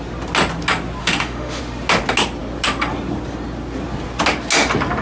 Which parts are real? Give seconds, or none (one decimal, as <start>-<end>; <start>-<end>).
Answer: 0.0-1.0; 1.6-5.0